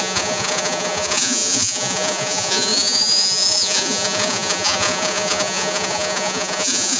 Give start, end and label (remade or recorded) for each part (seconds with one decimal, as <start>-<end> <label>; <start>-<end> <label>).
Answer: 0.0-7.0 remade